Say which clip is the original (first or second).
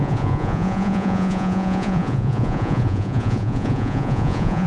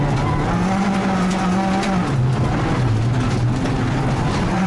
second